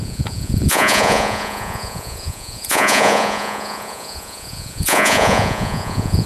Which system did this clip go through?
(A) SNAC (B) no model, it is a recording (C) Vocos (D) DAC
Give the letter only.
C